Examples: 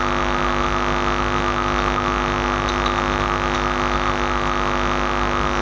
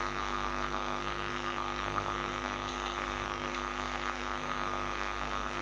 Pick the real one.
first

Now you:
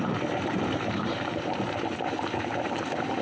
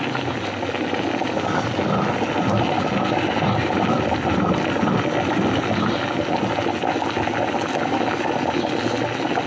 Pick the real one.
second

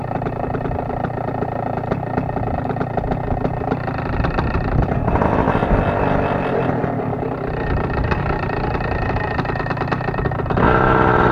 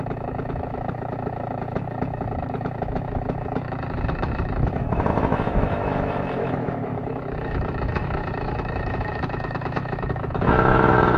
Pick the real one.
first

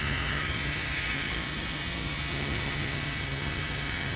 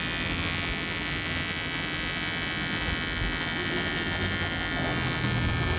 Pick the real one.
second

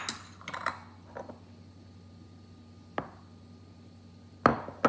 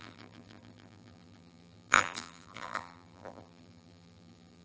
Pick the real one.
first